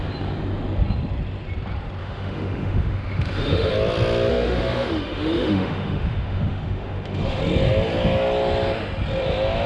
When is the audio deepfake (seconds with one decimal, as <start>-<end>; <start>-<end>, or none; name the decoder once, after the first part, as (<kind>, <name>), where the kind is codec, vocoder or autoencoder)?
2.0-3.7 (autoencoder, DAC-VAE); 4.3-7.4